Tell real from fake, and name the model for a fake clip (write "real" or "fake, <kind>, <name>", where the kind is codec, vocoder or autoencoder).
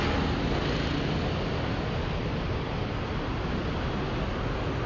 real